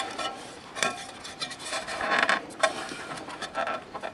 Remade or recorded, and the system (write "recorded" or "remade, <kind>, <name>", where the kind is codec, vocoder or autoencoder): remade, vocoder, BigVGAN v2